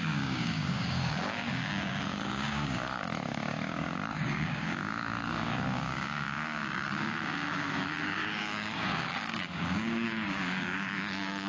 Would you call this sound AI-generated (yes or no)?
yes